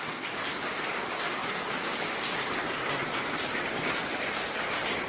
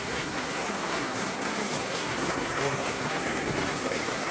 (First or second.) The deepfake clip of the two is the second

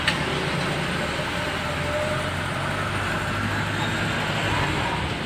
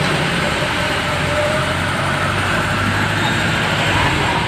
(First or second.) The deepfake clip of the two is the second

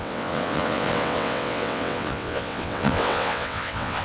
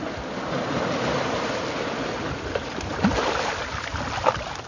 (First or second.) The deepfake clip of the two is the first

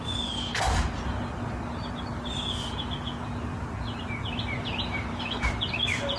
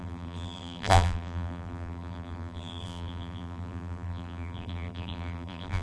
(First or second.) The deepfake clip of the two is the second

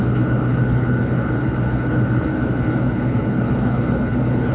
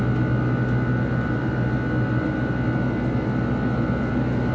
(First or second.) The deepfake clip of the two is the first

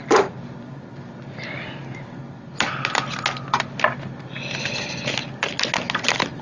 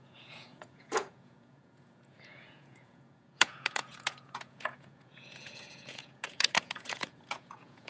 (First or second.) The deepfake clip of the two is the second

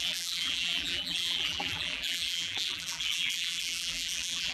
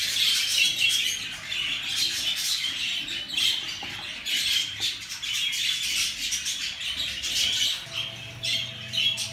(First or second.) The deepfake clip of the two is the first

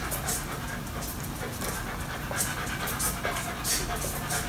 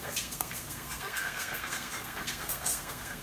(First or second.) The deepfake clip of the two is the second